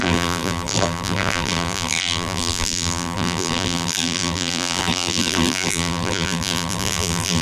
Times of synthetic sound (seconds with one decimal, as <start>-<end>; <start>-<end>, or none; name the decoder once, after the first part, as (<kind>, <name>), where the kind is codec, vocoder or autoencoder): 0.0-7.4 (vocoder, BigVGAN v2)

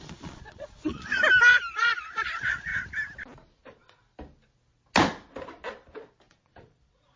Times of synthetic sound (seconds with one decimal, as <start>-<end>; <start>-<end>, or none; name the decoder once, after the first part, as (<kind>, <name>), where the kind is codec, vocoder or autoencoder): 0.0-1.2 (vocoder, Vocos); 1.7-2.7; 3.6-4.0; 6.3-7.2

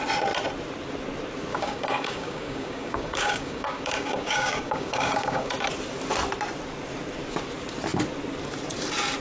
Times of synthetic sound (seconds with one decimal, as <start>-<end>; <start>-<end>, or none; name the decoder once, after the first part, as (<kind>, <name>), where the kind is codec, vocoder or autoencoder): 1.5-5.5 (codec, DAC)

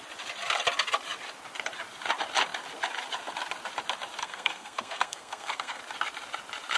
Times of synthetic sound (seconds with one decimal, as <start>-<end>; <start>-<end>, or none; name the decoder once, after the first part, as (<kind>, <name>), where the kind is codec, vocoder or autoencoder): 4.2-5.8 (codec, SNAC)

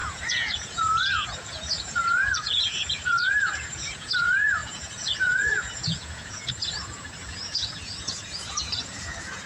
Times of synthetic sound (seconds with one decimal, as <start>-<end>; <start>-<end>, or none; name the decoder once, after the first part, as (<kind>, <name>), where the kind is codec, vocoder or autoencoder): 0.0-9.5 (vocoder, Vocos)